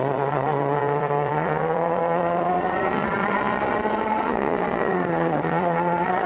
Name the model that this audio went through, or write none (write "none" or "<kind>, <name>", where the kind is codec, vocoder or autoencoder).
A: vocoder, Vocos